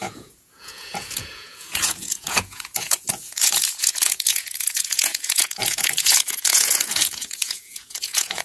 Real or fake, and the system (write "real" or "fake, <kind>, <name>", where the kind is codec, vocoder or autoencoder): fake, vocoder, Vocos